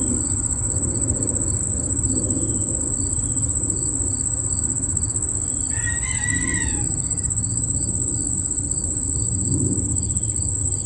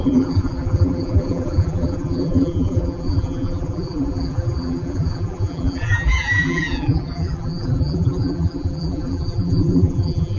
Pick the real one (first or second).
first